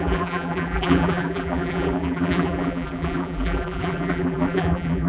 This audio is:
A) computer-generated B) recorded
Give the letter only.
A